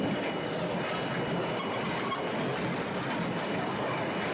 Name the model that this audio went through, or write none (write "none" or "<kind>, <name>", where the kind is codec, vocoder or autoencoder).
none